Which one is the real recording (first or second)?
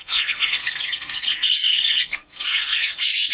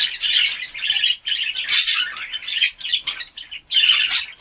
second